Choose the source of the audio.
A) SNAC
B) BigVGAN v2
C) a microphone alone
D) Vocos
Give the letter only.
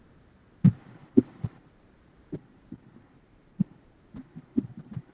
B